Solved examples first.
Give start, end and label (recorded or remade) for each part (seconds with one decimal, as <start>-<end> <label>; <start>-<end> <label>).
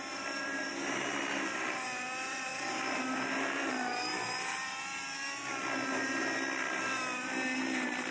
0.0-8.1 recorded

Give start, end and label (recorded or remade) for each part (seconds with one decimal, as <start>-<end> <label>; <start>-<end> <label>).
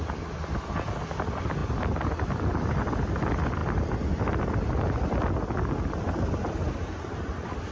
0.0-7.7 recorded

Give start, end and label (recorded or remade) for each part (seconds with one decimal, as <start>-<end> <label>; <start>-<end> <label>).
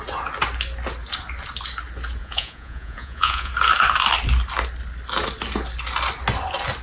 0.0-2.2 recorded; 2.2-3.5 remade; 3.5-6.8 recorded